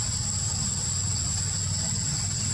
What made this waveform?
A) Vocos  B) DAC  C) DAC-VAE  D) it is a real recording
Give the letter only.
D